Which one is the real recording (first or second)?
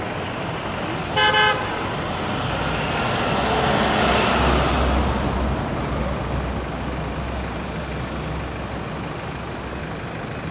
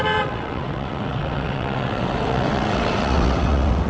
first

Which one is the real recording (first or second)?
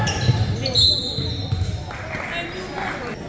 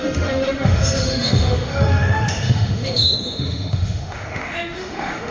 first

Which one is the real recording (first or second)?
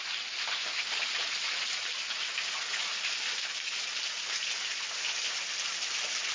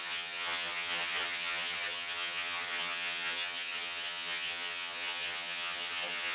first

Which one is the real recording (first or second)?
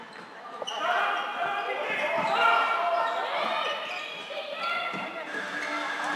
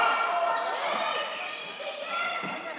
first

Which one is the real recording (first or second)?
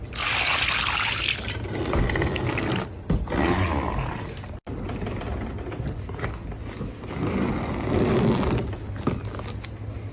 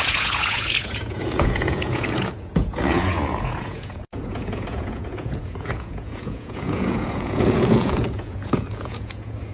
first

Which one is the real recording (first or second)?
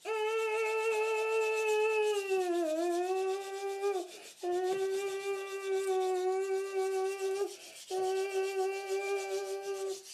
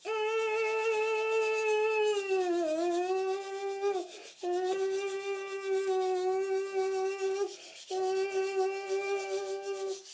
first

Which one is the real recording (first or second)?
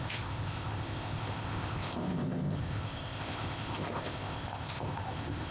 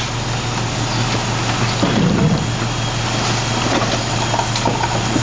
second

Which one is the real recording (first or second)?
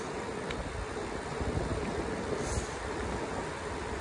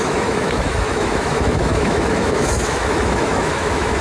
first